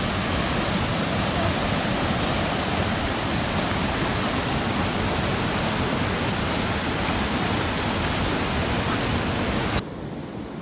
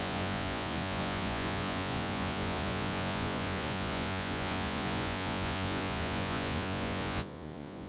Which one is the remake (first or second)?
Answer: second